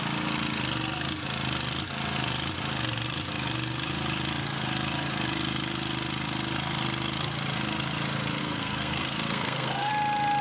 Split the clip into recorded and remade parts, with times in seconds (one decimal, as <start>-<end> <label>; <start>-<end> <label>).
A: 0.0-8.4 recorded; 8.4-9.9 remade; 9.9-10.4 recorded